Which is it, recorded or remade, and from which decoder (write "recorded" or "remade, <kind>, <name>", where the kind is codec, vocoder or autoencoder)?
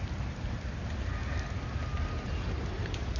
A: recorded